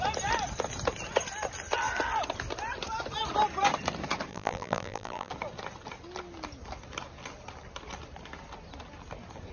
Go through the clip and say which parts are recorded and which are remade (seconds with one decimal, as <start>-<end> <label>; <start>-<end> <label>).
0.0-4.3 recorded; 4.3-5.3 remade; 5.3-9.5 recorded